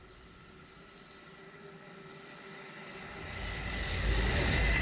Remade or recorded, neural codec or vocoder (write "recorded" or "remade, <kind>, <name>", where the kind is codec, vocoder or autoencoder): recorded